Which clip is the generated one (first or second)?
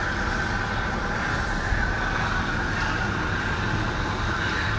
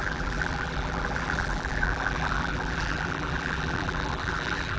second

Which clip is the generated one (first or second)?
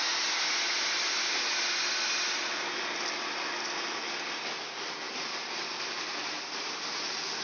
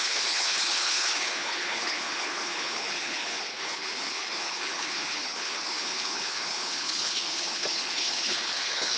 second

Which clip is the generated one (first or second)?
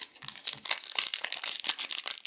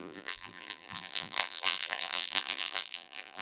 second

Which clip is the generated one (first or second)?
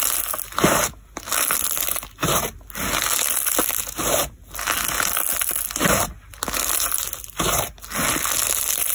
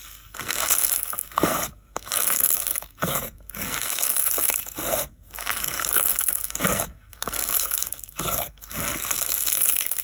second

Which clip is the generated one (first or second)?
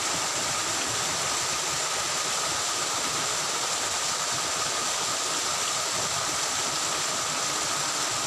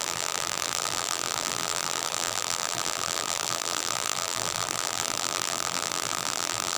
second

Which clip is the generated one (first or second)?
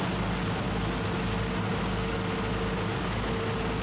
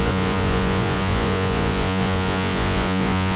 second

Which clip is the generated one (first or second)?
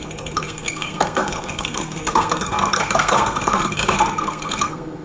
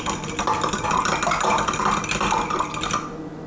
first